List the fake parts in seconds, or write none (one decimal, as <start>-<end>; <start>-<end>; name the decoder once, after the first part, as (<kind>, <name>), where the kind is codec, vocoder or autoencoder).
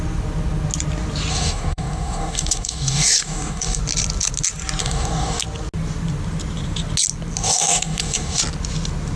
1.3-3.8 (codec, DAC); 4.8-5.4; 7.4-8.4